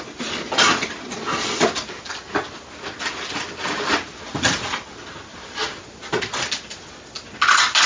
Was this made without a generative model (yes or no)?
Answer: yes